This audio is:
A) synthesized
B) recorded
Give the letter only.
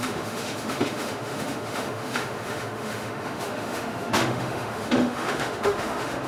A